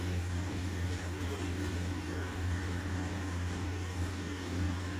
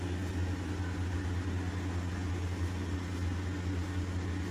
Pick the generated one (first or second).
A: first